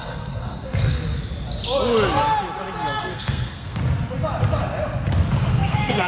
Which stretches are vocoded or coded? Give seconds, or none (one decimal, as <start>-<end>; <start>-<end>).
0.0-1.0; 3.0-3.8; 5.4-6.1